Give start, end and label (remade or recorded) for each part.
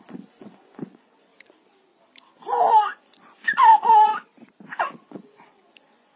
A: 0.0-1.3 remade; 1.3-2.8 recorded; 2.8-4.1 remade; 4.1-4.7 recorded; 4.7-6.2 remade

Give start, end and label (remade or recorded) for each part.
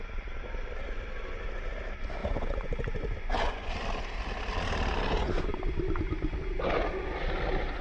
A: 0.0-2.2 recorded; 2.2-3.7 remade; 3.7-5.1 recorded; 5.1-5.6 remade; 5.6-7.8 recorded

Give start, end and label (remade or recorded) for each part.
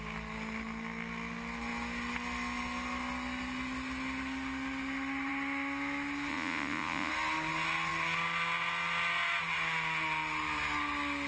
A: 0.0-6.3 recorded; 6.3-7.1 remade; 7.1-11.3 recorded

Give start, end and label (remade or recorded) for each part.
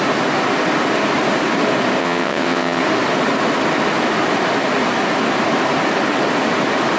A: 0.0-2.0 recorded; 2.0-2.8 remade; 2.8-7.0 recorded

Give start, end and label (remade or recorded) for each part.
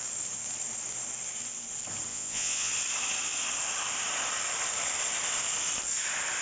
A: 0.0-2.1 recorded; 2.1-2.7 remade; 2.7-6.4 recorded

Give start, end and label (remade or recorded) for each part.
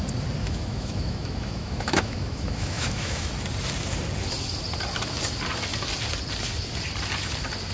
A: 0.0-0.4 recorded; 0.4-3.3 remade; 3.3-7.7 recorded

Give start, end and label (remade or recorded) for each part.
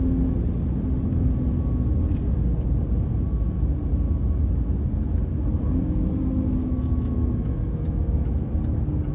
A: 0.0-6.6 recorded; 6.6-8.5 remade; 8.5-9.1 recorded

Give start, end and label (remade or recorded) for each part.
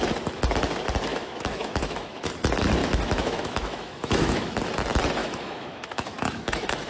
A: 0.0-1.1 recorded; 1.1-2.3 remade; 2.3-2.8 recorded; 2.8-4.7 remade; 4.7-5.2 recorded; 5.2-6.9 remade